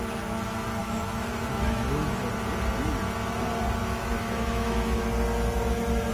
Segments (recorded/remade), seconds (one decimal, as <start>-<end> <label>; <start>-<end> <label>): 0.0-0.8 recorded; 0.8-2.2 remade; 2.2-3.8 recorded; 3.8-5.0 remade; 5.0-6.1 recorded